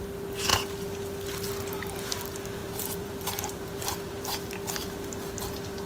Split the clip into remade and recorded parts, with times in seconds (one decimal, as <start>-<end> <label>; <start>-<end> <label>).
0.0-2.6 recorded; 2.6-4.0 remade; 4.0-5.9 recorded

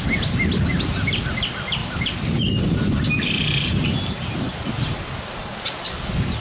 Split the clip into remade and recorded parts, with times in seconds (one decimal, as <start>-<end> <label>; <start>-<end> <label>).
0.0-1.8 recorded; 1.8-2.6 remade; 2.6-6.4 recorded

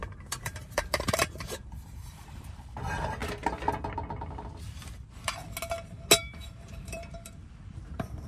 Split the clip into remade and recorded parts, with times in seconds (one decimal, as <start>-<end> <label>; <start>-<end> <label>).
0.0-3.2 remade; 3.2-6.2 recorded; 6.2-8.3 remade

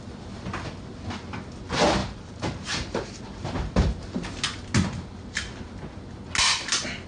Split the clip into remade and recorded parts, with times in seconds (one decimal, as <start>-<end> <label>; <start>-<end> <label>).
0.0-2.0 recorded; 2.0-3.2 remade; 3.2-7.1 recorded

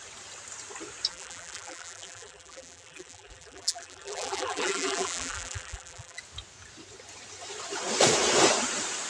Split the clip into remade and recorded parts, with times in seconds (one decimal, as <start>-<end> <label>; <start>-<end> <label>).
0.0-1.1 recorded; 1.1-6.2 remade; 6.2-9.1 recorded